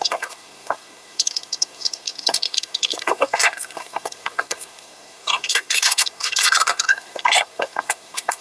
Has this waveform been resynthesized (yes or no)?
yes